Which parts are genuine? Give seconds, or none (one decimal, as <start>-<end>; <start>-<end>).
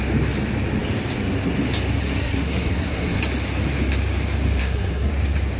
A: 0.0-2.0; 3.2-4.6; 5.1-5.6